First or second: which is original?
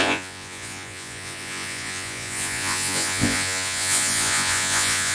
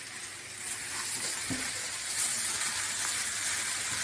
second